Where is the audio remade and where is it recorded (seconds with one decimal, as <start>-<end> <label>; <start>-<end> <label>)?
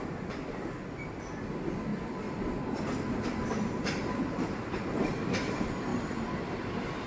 0.0-1.9 remade; 1.9-3.5 recorded; 3.5-7.1 remade